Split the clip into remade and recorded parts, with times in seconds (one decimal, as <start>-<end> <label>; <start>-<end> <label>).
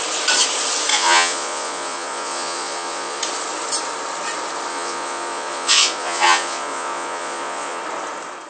0.0-0.9 recorded; 0.9-3.2 remade; 3.2-4.7 recorded; 4.7-7.8 remade; 7.8-8.5 recorded